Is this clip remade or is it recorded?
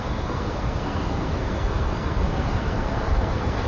remade